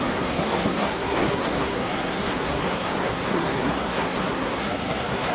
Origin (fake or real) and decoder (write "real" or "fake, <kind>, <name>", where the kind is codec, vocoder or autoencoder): fake, codec, SNAC